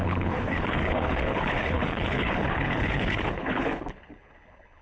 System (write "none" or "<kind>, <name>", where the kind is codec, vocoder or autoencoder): codec, HILCodec